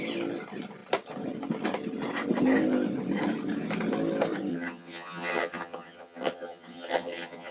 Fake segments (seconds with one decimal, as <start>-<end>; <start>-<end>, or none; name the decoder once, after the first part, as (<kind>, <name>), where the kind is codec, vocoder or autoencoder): 4.5-7.5 (vocoder, HiFi-GAN)

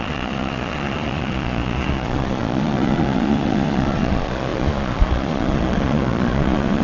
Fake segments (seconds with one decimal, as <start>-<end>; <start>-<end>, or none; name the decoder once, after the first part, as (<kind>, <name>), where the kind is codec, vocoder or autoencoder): 0.0-6.8 (vocoder, Vocos)

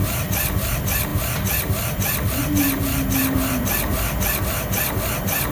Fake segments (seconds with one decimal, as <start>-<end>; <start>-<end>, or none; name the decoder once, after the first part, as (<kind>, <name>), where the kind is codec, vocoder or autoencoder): none

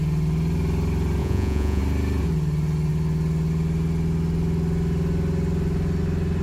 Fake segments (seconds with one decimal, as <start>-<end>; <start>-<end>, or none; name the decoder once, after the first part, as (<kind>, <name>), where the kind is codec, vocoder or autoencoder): 1.2-1.8 (vocoder, Vocos)